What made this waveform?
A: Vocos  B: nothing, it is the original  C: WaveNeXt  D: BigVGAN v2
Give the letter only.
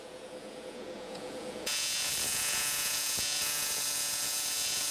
A